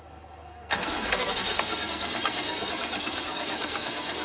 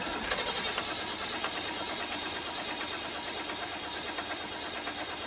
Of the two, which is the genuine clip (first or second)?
second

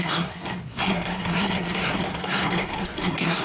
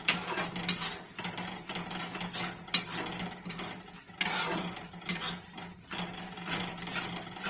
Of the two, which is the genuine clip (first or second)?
second